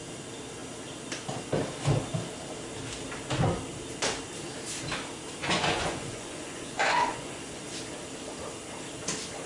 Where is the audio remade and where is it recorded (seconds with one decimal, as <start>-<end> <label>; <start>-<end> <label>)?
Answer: 0.0-5.4 recorded; 5.4-7.6 remade; 7.6-9.5 recorded